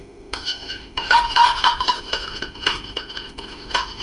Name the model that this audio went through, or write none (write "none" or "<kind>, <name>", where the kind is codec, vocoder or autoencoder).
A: autoencoder, DAC-VAE